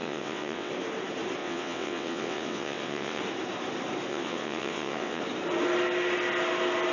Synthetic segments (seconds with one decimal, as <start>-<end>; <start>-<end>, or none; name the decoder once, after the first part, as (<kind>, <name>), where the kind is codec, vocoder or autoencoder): 0.0-0.7 (vocoder, WaveNeXt); 1.4-3.2; 4.1-5.2